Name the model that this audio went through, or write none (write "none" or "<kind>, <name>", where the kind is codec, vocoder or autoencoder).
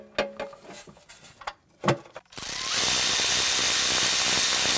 none